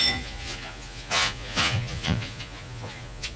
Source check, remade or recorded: remade